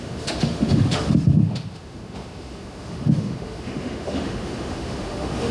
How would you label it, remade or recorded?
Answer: remade